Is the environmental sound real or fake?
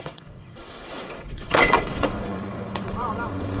fake